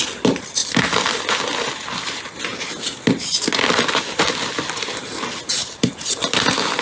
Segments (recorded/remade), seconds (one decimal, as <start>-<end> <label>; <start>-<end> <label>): 0.0-6.8 recorded